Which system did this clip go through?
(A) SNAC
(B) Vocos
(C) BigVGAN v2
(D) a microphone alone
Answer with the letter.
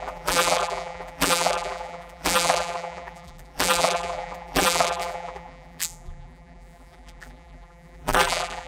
C